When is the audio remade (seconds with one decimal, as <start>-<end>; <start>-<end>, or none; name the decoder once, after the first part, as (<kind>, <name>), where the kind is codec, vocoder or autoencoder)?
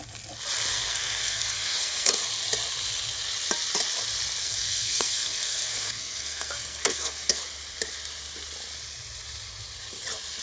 0.7-2.2 (codec, SNAC); 4.4-7.4